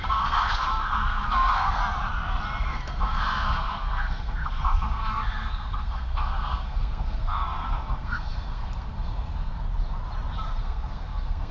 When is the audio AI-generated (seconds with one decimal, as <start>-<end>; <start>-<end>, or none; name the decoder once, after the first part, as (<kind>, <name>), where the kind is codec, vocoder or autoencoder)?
0.0-1.8 (codec, SNAC); 2.6-9.5; 10.6-11.5